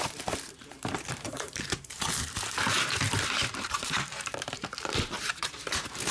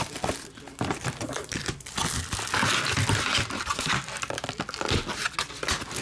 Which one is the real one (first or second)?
second